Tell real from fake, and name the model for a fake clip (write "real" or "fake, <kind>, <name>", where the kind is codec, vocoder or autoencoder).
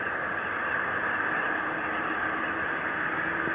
real